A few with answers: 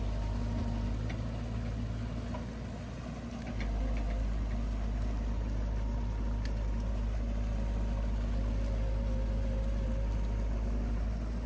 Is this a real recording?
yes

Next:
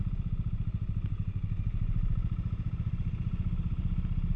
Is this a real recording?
yes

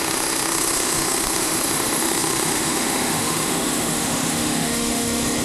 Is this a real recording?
no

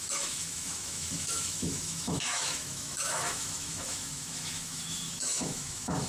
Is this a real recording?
no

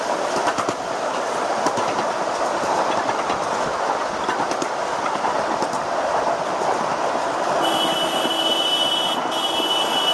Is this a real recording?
yes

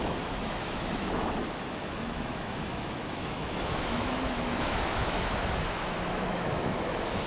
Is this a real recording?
no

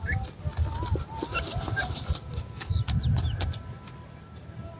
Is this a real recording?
yes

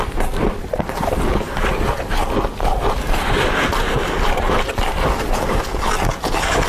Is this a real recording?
yes